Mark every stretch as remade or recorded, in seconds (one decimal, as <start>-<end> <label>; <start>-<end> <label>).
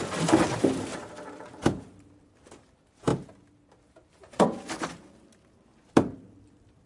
0.0-0.9 recorded; 0.9-2.3 remade; 2.3-4.2 recorded; 4.2-6.5 remade; 6.5-6.9 recorded